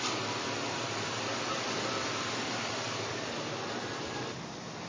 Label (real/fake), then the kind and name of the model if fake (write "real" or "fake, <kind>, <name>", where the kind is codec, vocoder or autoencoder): fake, vocoder, BigVGAN v2